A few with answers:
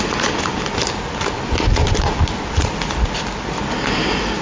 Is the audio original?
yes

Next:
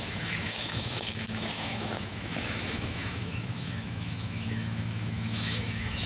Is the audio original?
no